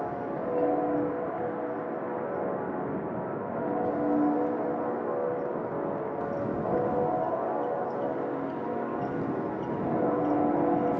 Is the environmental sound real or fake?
real